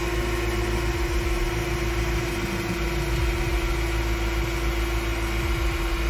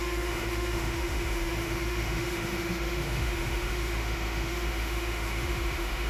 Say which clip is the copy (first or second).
second